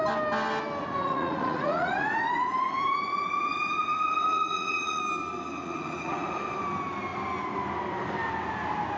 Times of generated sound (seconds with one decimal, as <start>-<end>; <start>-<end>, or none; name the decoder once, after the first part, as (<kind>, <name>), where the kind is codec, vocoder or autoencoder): 0.8-5.0 (vocoder, Vocos); 5.6-6.4